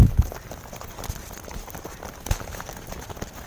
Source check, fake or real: real